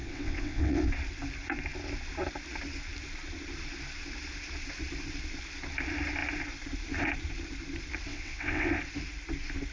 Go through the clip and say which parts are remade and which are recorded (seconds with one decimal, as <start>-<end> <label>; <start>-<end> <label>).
0.0-0.9 remade; 0.9-8.1 recorded; 8.1-8.7 remade; 8.7-9.7 recorded